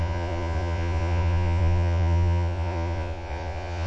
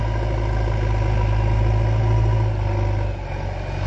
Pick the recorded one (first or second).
second